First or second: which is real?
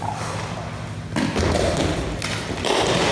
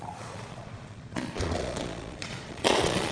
first